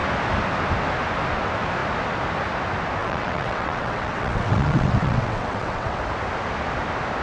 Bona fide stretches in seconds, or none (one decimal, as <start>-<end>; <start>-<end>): 0.0-3.0; 6.0-7.2